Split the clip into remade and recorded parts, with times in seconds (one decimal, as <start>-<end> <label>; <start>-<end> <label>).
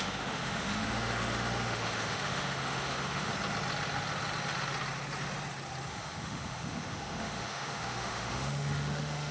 0.0-3.3 remade; 3.3-5.9 recorded; 5.9-9.3 remade